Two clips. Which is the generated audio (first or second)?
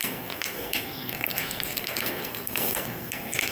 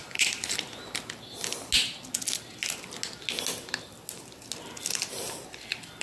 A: first